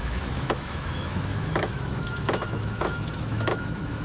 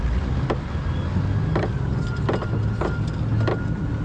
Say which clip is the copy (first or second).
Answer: first